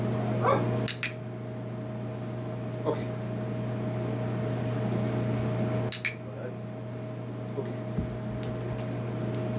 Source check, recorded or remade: recorded